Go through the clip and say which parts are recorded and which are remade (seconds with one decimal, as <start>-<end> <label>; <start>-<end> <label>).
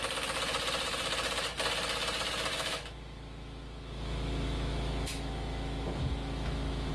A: 0.0-2.5 recorded; 2.5-6.9 remade